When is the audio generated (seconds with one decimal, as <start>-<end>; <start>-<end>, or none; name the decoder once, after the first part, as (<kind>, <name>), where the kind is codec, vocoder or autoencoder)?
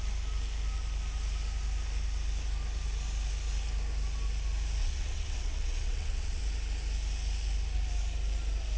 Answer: 4.8-6.4 (vocoder, WaveNeXt)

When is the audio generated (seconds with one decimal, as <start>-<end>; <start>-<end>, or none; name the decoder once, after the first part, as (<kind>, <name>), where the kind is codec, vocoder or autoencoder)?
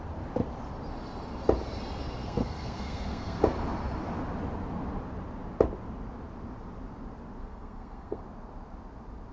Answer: 2.2-3.4 (codec, SNAC); 7.4-8.2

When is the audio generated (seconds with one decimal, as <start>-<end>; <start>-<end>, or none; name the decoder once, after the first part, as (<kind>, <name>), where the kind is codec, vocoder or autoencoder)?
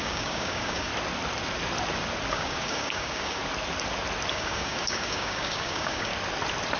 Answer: 0.0-0.9 (codec, DAC); 2.3-3.4; 4.3-6.1